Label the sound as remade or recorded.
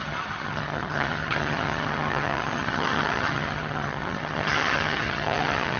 remade